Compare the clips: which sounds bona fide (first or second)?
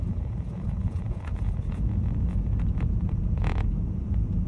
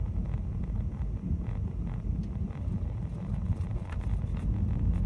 second